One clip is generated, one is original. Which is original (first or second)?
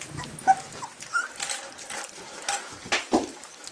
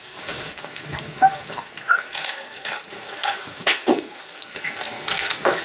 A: first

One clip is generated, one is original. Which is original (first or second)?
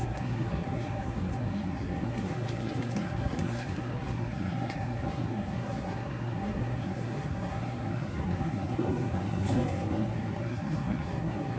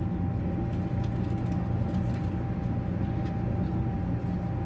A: second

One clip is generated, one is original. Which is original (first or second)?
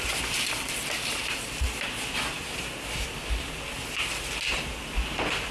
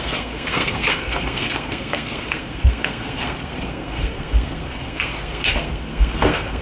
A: first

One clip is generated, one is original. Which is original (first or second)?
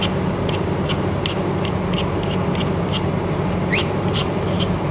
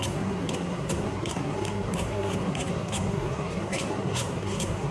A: first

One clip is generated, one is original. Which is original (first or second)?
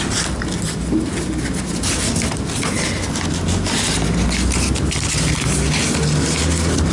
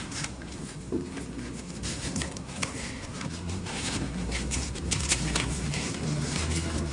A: first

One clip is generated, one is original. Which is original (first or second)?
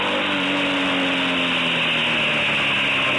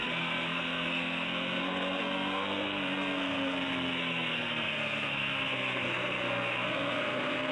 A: first